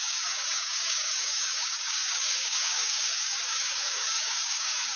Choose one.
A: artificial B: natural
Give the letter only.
A